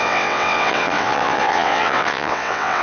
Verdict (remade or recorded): remade